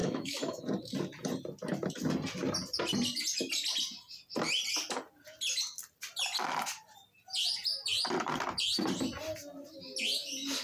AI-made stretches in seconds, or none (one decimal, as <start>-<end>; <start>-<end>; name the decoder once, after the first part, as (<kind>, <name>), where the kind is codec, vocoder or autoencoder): 0.0-0.6 (autoencoder, DAC-VAE)